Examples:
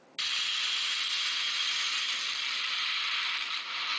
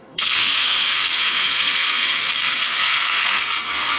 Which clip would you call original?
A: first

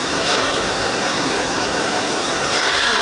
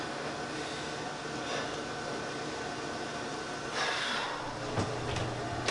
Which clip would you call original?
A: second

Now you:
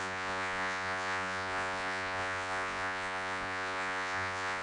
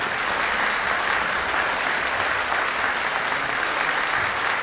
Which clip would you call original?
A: second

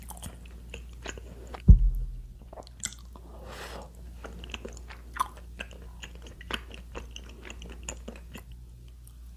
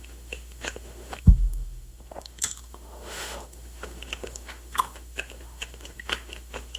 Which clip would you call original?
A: first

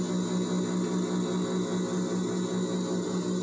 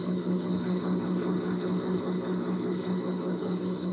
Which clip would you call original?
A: first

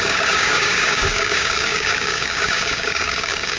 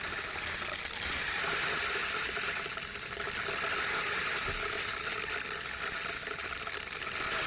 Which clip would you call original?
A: second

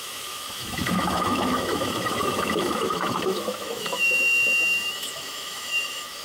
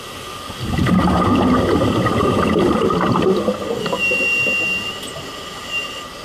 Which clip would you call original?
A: second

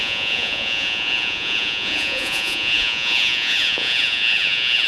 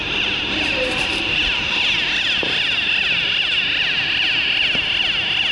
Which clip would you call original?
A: second